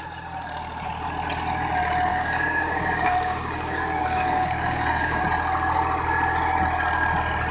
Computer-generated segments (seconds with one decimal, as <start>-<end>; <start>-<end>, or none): 2.1-5.2